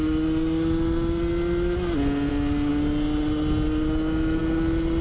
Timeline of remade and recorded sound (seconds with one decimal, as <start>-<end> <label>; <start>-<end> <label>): 0.0-5.0 recorded